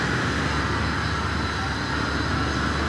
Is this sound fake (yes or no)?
no